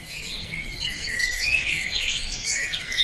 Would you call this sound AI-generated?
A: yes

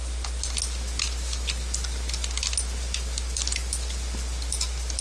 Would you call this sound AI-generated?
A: no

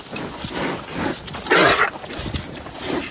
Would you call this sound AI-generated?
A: no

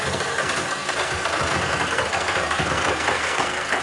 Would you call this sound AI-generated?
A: yes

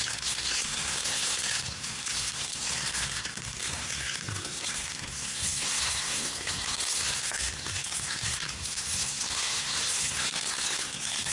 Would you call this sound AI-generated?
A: yes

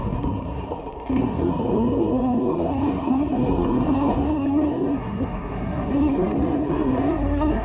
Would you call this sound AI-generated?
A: yes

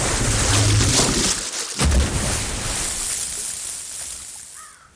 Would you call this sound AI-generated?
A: no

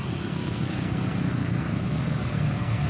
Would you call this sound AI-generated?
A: yes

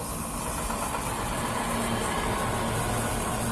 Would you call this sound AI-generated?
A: no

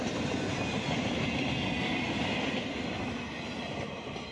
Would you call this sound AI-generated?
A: no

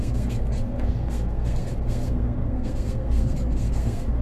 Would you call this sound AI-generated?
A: yes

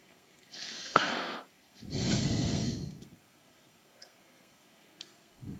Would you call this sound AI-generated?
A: yes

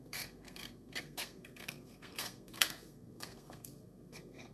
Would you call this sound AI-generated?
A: yes